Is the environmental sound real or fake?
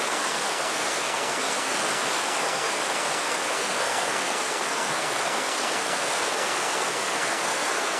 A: fake